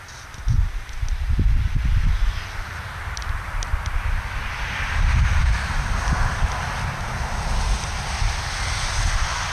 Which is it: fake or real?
real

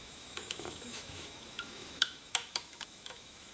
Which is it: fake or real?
fake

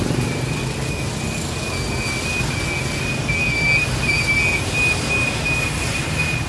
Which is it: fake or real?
real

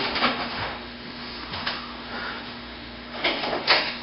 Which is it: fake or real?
fake